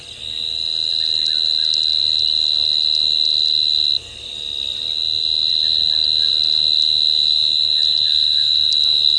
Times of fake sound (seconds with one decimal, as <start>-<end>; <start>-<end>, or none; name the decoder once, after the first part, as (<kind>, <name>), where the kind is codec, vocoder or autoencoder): 7.2-8.7 (autoencoder, DAC-VAE)